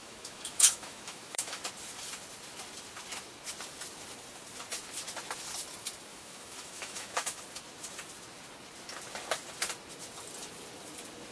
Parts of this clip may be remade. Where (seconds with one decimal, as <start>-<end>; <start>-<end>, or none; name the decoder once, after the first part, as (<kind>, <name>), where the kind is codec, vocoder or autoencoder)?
0.0-1.6 (autoencoder, DAC-VAE); 6.1-7.4